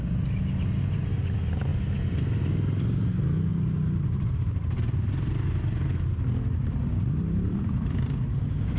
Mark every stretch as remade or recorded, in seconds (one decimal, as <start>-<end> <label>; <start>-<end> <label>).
0.0-1.7 recorded; 1.7-2.2 remade; 2.2-3.5 recorded; 3.5-8.3 remade; 8.3-8.8 recorded